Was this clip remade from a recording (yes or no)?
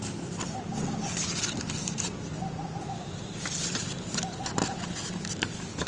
no